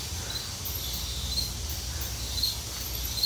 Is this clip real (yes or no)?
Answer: yes